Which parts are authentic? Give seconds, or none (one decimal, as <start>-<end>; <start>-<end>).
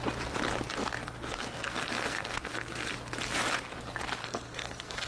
0.0-1.0; 2.9-4.2